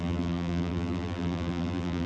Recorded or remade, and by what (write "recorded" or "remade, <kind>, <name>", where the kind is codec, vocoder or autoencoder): remade, vocoder, BigVGAN v2